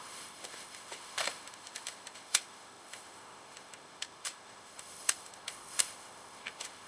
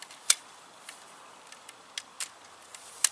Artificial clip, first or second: first